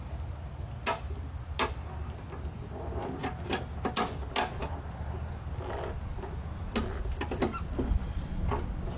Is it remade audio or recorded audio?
recorded